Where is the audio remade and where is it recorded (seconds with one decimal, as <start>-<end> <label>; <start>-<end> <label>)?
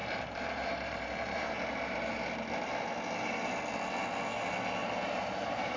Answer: 0.0-1.4 remade; 1.4-4.8 recorded; 4.8-5.8 remade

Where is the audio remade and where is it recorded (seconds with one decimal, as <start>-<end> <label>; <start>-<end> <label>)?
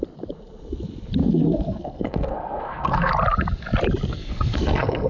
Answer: 0.0-1.2 recorded; 1.2-3.1 remade; 3.1-4.1 recorded; 4.1-5.1 remade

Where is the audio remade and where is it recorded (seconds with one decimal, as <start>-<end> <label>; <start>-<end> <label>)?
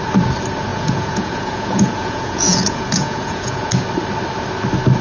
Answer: 0.0-0.7 recorded; 0.7-3.7 remade; 3.7-5.0 recorded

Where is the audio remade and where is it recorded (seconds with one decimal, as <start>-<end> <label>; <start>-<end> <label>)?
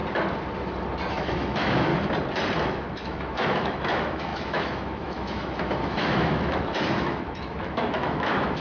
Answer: 0.0-1.1 recorded; 1.1-1.9 remade; 1.9-2.6 recorded; 2.6-8.6 remade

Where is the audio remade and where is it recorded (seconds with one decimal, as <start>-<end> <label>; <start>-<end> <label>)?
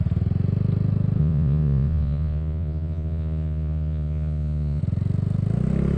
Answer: 0.0-1.2 recorded; 1.2-4.8 remade; 4.8-6.0 recorded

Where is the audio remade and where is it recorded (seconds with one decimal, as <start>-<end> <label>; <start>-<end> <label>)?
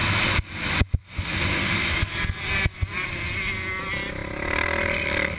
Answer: 0.0-1.8 remade; 1.8-5.4 recorded